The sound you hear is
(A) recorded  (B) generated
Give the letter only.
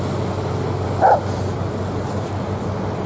A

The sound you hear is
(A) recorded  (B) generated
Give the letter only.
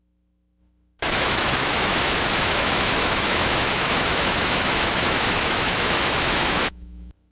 B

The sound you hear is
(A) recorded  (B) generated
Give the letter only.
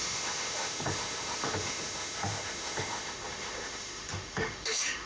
B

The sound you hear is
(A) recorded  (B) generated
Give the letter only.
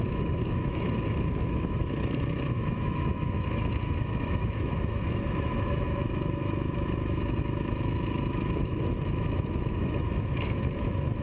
B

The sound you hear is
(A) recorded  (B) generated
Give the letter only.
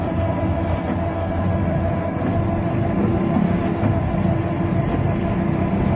A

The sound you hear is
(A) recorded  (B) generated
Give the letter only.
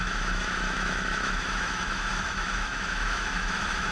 B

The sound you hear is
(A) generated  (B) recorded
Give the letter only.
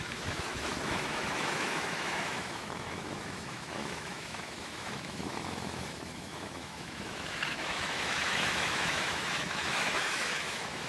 A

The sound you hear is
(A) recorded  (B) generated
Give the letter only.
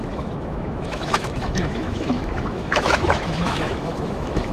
B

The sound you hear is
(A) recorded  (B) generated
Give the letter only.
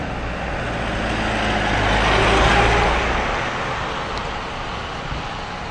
A